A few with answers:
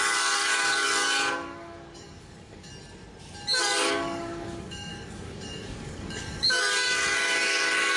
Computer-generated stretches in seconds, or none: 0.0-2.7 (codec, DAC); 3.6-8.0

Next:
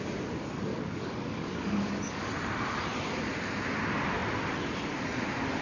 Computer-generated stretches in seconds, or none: 0.7-2.3 (codec, DAC)

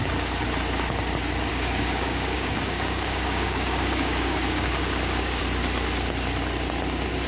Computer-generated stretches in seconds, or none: 1.5-5.4 (codec, DAC)

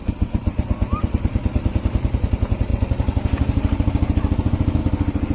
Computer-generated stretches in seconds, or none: none

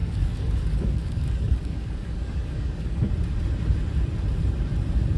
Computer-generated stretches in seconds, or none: 0.0-3.1 (codec, DAC)

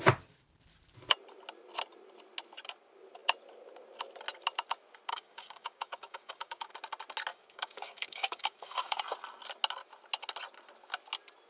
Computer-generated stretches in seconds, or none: 5.1-6.7 (codec, DAC); 7.3-9.0

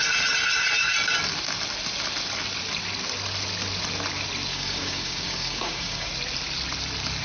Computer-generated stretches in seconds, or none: 4.5-6.1 (codec, DAC)

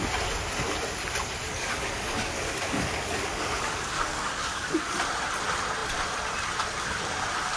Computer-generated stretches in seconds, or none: 1.5-5.0 (codec, DAC)